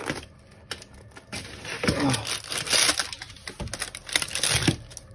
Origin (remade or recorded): recorded